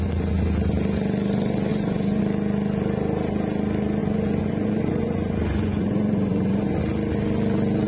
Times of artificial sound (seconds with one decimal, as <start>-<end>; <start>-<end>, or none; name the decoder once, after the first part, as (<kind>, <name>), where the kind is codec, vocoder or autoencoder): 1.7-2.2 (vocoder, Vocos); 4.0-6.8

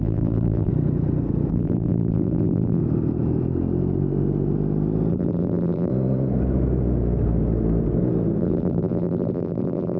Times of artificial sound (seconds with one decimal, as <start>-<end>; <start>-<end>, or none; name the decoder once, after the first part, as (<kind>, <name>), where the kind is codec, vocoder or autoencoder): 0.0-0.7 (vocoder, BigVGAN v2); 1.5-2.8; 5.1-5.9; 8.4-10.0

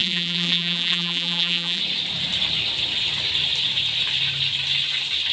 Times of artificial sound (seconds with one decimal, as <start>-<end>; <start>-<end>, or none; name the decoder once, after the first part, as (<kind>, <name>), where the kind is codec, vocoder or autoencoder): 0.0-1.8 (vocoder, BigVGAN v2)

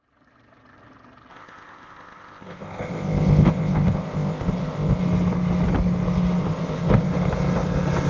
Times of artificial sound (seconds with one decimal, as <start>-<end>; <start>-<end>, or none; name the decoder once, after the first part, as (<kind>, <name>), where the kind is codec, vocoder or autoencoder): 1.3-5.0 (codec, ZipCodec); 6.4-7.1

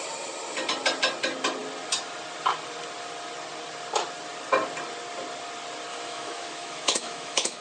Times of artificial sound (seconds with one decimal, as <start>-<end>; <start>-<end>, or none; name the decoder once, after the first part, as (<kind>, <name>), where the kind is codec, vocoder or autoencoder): 5.9-7.6 (autoencoder, DAC-VAE)